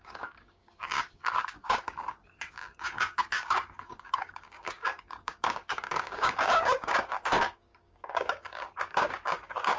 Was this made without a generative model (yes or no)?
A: no